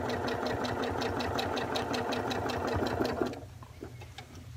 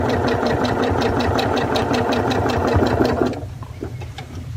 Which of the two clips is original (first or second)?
first